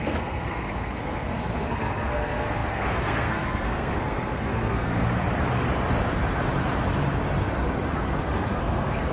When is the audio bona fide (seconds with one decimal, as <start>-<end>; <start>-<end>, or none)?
5.0-8.2